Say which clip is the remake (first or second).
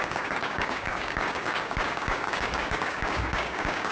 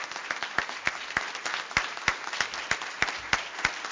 first